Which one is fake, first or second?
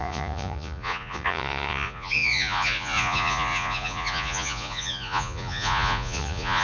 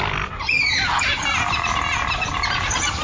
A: first